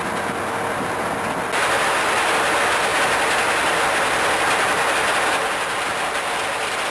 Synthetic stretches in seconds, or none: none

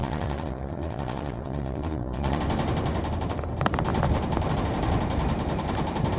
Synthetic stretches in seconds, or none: 0.0-2.4

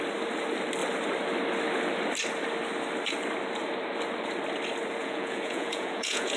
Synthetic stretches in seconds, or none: 5.0-6.4

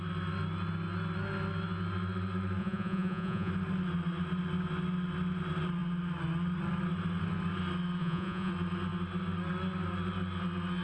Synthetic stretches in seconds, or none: 2.6-3.5; 8.0-8.5

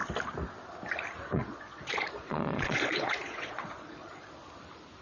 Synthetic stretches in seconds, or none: 1.3-4.3

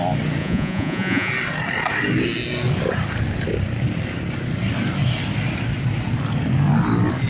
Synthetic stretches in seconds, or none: 0.4-1.3